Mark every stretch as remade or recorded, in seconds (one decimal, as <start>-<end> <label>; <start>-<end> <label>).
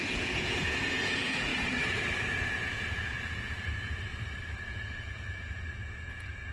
0.0-1.5 remade; 1.5-2.3 recorded; 2.3-4.1 remade; 4.1-4.7 recorded; 4.7-6.5 remade